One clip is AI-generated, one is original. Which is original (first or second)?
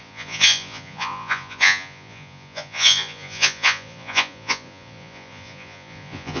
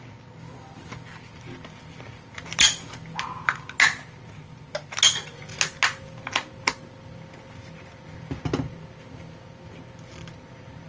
second